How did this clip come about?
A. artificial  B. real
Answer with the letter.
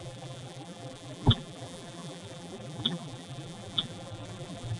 A